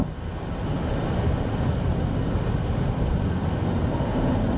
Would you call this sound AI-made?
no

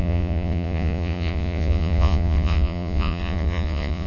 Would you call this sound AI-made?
yes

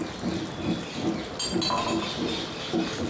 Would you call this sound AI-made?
no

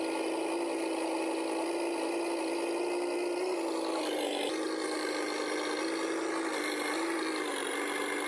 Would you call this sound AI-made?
no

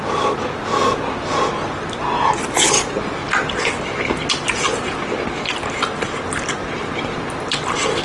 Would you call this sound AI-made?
no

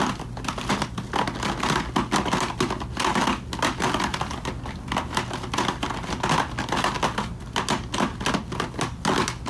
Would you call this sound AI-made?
no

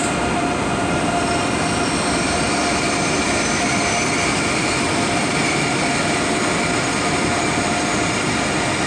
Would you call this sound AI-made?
no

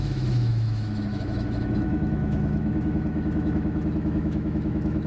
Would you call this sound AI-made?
yes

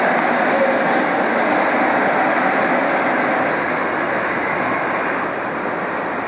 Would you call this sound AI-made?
no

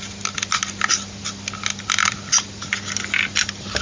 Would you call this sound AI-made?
no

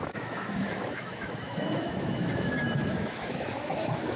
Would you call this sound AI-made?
yes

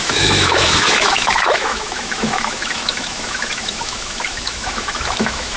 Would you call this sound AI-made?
yes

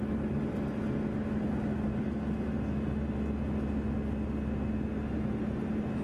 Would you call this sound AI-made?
no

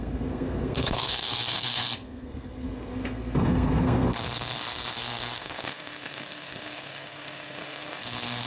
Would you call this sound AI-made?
yes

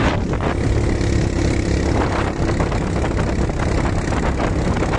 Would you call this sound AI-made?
no